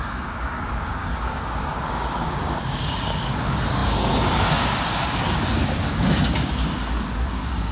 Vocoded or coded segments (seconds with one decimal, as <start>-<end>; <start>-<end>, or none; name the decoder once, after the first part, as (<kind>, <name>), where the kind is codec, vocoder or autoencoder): 0.0-7.7 (codec, DAC)